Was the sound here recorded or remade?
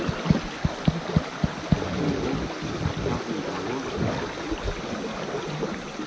recorded